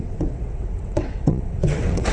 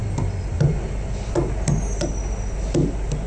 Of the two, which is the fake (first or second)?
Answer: first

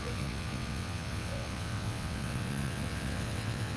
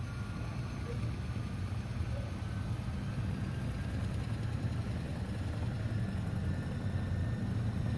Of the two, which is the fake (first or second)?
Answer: first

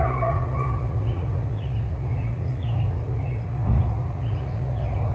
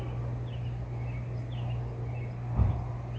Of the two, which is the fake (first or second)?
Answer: first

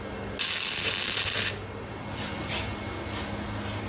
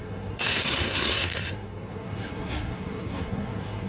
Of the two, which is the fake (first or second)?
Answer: second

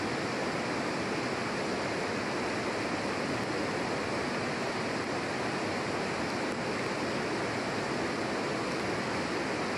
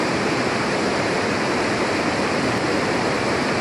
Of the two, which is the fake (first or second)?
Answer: second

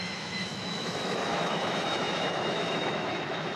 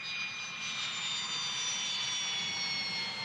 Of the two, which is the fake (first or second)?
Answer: first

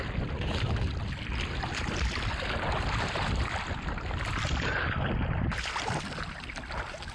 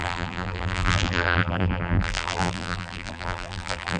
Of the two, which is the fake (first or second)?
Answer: second